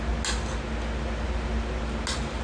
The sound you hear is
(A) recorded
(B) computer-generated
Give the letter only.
A